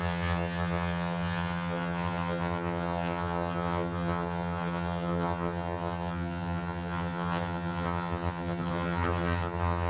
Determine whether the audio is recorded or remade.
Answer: remade